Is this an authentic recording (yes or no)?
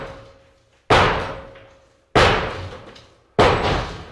yes